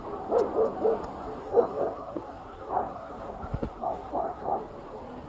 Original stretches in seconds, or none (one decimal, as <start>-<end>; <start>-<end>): 0.0-1.4; 4.6-5.3